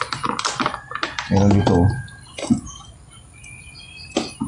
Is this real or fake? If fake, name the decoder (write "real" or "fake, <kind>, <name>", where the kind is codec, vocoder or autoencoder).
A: real